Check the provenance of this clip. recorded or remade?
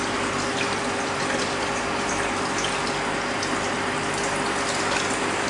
recorded